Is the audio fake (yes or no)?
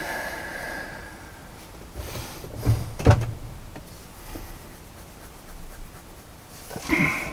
yes